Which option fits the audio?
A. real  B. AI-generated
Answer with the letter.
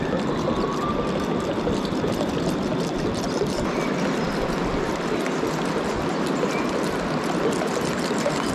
A